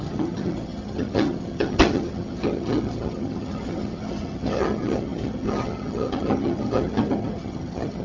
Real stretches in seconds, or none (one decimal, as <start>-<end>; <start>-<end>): none